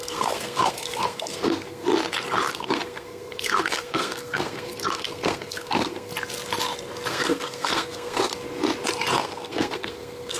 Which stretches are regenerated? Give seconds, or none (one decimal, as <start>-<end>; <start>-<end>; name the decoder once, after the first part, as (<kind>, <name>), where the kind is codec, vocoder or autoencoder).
0.0-1.9 (codec, SNAC); 2.5-6.1; 7.1-8.3; 9.2-10.4